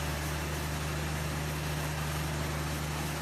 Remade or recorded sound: recorded